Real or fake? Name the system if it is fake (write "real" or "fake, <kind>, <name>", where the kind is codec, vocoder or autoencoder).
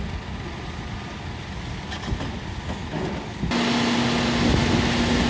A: real